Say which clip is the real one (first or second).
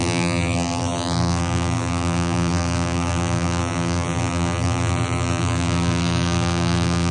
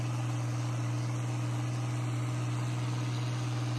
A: second